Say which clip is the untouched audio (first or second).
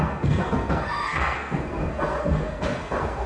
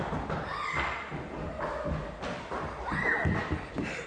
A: second